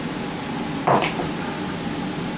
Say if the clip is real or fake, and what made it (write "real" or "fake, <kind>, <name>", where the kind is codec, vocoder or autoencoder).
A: real